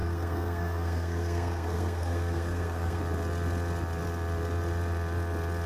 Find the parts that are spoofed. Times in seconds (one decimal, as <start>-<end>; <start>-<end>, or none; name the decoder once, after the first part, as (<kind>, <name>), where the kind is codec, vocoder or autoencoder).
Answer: 0.0-3.0 (codec, SNAC)